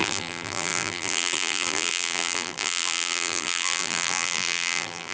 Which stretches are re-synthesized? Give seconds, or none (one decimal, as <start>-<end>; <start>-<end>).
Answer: 0.0-5.1